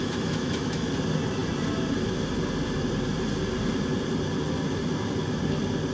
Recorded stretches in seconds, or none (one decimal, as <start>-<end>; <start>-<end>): 0.9-5.9